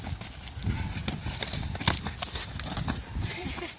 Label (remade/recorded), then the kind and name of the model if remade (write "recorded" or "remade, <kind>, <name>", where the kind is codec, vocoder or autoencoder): recorded